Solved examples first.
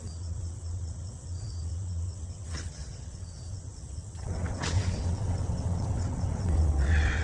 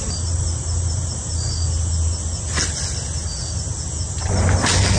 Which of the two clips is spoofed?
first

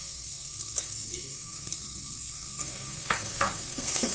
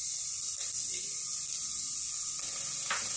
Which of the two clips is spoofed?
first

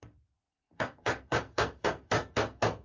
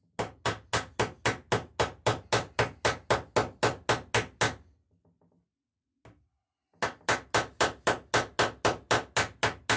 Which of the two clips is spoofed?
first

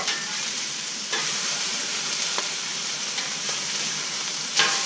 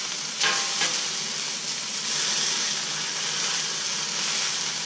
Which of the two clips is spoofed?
first